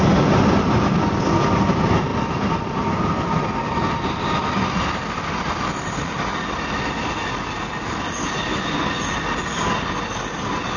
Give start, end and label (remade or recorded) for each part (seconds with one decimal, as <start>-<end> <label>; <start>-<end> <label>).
0.0-2.1 recorded; 2.1-4.4 remade; 4.4-10.8 recorded